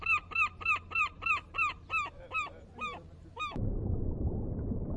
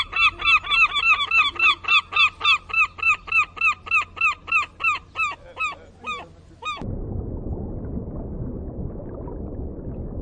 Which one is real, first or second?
second